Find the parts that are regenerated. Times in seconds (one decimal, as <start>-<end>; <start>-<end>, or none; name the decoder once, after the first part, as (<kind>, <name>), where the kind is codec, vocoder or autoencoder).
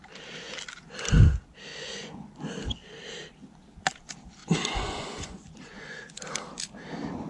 1.7-2.4 (vocoder, Vocos); 4.4-6.2